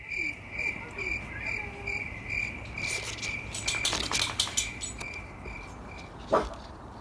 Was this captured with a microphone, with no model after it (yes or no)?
yes